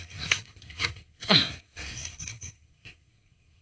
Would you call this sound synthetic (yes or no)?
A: yes